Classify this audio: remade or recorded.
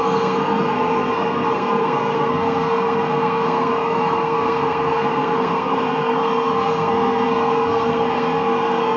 remade